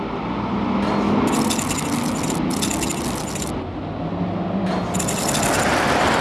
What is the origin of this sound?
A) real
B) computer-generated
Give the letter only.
A